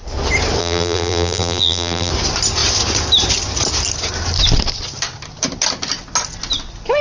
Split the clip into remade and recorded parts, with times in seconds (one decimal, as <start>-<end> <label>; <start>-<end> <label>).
0.0-0.6 recorded; 0.6-2.1 remade; 2.1-7.0 recorded